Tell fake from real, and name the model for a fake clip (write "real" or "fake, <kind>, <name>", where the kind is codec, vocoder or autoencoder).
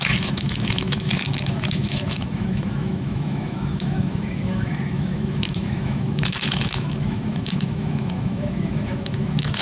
fake, autoencoder, DAC-VAE